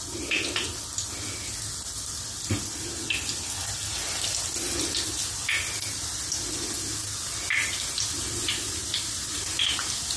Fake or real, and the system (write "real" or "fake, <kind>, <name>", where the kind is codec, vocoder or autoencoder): real